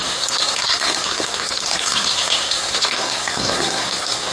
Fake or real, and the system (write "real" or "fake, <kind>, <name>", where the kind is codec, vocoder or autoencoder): fake, codec, SNAC